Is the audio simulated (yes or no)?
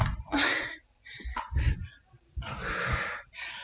yes